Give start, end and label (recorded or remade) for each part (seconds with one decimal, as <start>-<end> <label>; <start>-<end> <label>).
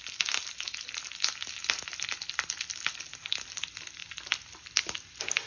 0.0-5.5 recorded